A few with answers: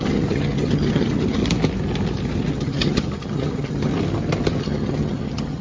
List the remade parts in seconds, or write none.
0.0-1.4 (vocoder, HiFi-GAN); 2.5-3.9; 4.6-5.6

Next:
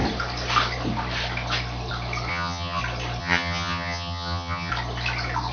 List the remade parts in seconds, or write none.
2.3-2.8 (vocoder, HiFi-GAN); 3.2-4.7

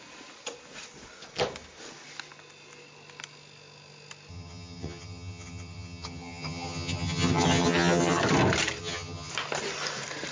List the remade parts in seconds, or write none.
4.3-8.2 (vocoder, HiFi-GAN); 8.8-9.3